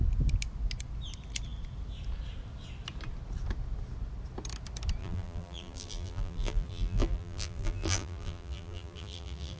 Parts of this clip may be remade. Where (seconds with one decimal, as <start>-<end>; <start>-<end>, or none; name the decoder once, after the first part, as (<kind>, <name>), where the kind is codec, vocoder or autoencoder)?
5.0-9.6 (vocoder, BigVGAN v2)